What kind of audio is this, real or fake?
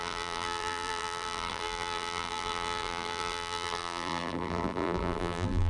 fake